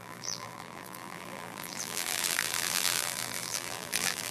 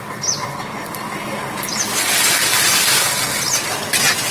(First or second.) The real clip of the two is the second